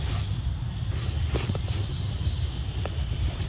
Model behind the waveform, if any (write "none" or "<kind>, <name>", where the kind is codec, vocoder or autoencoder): none